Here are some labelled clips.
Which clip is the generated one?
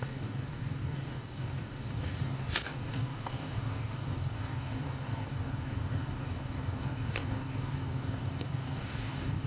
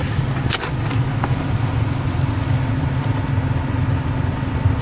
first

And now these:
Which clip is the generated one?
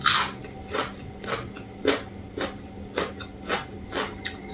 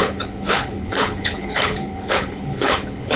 second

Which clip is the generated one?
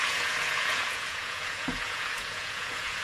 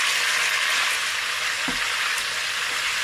first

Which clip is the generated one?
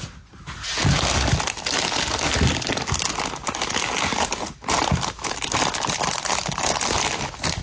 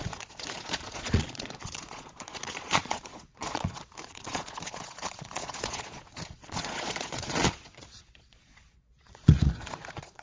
second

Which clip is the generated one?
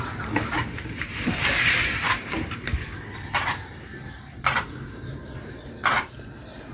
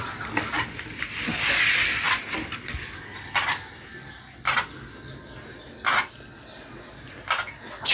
first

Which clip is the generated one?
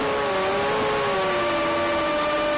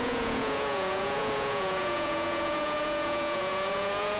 second